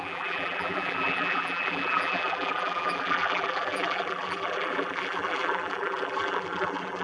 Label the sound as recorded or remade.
remade